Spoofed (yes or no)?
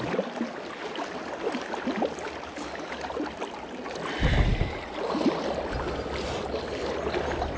no